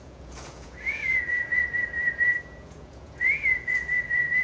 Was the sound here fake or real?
fake